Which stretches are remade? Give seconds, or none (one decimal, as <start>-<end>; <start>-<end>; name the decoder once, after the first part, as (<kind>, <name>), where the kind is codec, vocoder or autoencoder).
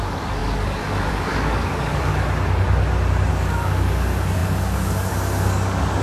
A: 0.0-2.1 (codec, DAC); 3.3-6.0